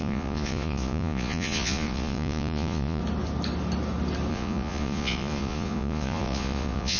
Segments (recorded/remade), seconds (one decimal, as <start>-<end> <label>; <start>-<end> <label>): 0.0-3.0 remade; 3.0-4.3 recorded; 4.3-7.0 remade